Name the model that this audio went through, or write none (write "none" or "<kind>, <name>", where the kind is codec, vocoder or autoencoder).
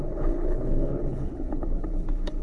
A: codec, HILCodec